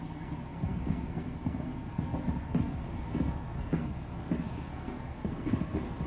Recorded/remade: remade